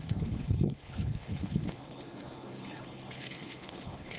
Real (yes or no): no